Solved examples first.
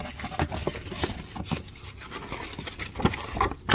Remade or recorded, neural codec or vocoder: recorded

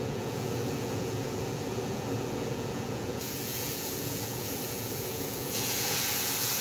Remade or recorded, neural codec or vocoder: remade, vocoder, Vocos